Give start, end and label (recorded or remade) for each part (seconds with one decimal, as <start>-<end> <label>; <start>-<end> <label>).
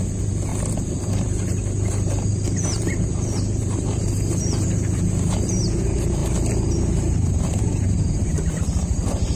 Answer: 0.0-0.5 remade; 0.5-1.0 recorded; 1.0-6.2 remade; 6.2-6.9 recorded; 6.9-9.4 remade